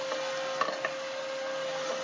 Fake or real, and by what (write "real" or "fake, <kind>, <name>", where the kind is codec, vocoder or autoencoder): real